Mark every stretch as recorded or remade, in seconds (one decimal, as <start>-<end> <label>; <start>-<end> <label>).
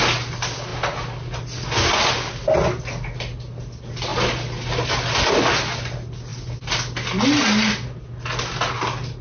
0.0-9.2 recorded